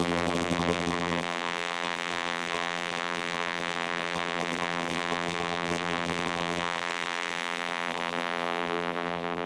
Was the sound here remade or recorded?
remade